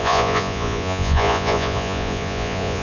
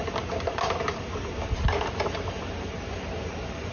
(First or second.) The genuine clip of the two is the second